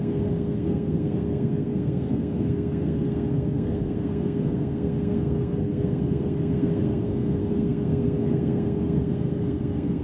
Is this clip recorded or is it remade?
remade